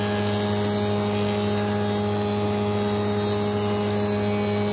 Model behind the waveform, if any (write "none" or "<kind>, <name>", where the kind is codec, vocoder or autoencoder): none